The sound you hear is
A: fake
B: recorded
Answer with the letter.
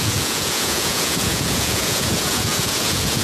A